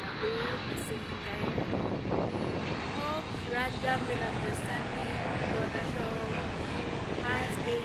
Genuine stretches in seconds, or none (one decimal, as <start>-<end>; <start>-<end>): 0.8-3.3